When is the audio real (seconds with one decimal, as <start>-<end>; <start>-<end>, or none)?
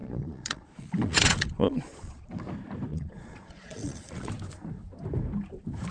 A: 2.3-2.9; 4.3-5.9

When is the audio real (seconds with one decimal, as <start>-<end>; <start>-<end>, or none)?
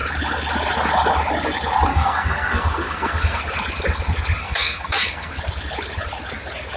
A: 0.0-1.9; 3.4-4.4; 5.3-6.8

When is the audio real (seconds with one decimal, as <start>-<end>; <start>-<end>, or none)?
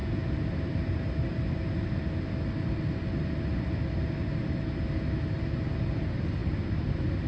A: 0.0-7.3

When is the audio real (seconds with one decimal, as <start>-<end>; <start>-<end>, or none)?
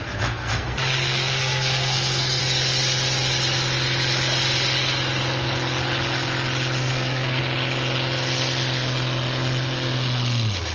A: 2.4-6.8; 7.4-10.7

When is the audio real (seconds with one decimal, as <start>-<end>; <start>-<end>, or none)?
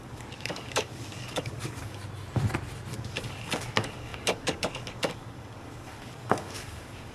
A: 2.0-2.9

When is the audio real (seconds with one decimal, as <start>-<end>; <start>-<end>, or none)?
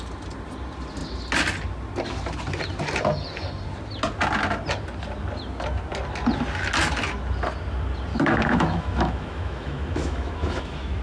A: 0.0-8.1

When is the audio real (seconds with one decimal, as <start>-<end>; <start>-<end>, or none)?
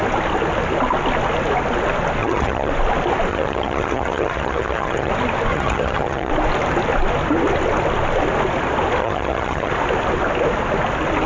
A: 0.0-2.2; 2.7-3.3; 5.1-5.5; 6.3-9.0; 9.7-11.3